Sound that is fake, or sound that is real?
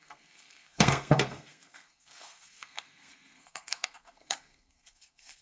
fake